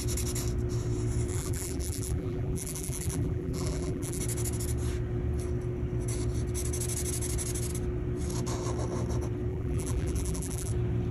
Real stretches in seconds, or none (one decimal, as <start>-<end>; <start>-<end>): 0.0-1.3; 4.2-9.5; 10.7-11.1